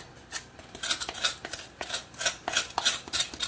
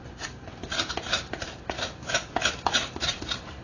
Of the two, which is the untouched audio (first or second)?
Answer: first